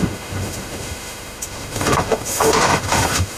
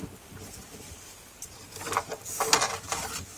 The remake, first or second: first